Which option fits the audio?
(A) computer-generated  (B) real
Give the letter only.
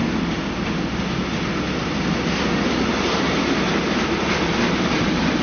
B